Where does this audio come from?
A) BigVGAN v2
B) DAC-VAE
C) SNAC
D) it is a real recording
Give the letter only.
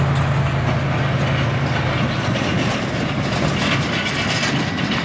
D